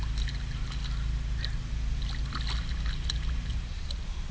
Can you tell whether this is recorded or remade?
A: recorded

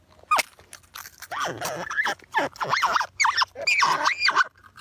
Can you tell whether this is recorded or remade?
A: recorded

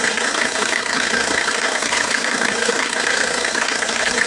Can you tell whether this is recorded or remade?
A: remade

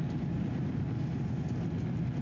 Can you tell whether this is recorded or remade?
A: recorded